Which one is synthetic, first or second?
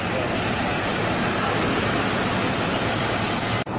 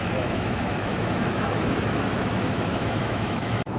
second